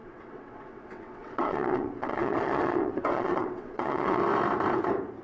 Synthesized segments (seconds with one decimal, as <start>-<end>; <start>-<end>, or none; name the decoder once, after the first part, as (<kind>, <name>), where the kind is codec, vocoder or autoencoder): 0.0-4.2 (vocoder, WaveNeXt)